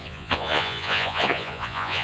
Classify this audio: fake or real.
fake